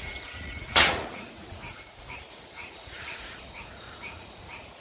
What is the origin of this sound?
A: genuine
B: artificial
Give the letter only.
B